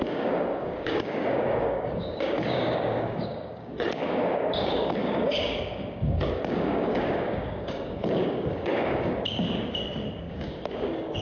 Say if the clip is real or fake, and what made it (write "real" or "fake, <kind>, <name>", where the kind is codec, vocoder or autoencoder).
fake, codec, DAC